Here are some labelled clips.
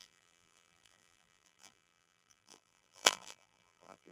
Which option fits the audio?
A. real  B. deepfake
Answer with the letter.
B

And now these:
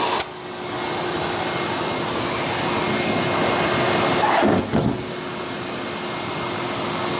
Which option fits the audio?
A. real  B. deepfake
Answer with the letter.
A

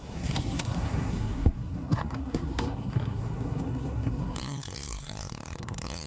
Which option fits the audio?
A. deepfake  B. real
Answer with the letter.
A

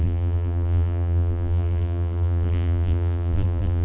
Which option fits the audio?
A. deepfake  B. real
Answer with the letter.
A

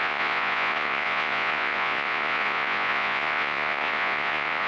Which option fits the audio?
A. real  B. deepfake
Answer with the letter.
B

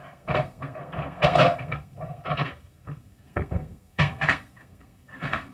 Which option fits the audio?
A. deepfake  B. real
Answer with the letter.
A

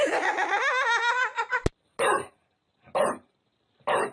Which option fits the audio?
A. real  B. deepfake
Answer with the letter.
A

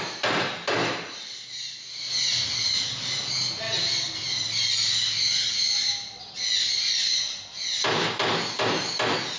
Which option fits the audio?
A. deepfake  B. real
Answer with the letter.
B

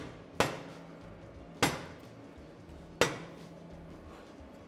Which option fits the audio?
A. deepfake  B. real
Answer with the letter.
B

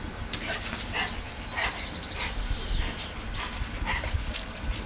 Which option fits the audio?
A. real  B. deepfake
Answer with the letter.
A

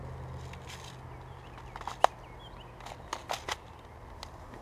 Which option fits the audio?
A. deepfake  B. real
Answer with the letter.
B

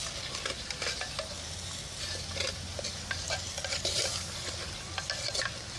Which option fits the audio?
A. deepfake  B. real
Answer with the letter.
B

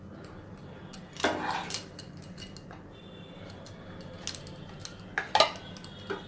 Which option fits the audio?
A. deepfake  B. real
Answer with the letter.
B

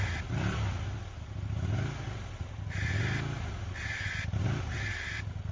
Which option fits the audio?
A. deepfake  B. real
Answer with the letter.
B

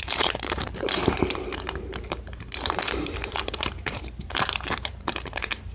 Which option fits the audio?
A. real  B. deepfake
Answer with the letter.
B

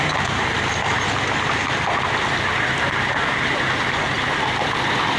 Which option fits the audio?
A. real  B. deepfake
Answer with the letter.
A